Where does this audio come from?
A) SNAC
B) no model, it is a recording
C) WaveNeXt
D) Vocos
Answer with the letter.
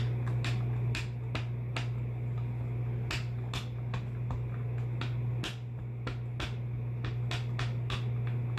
B